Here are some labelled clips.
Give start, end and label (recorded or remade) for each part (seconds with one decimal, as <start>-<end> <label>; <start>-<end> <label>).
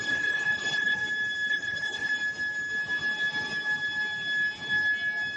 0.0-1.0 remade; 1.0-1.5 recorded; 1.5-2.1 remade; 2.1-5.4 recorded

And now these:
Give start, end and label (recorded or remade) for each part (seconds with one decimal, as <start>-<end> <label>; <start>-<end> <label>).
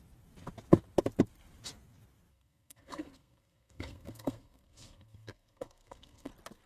0.0-2.3 recorded; 2.3-6.3 remade; 6.3-6.7 recorded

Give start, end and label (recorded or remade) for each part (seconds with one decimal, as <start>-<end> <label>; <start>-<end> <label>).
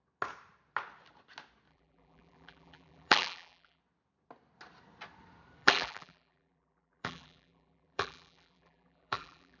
0.0-1.7 recorded; 1.7-3.8 remade; 3.8-5.6 recorded; 5.6-9.6 remade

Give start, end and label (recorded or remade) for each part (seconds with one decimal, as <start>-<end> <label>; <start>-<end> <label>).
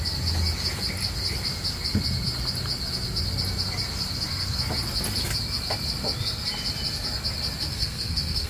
0.0-7.7 recorded; 7.7-8.5 remade